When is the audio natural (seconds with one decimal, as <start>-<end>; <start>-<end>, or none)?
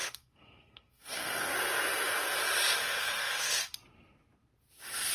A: 1.5-2.8; 3.6-5.1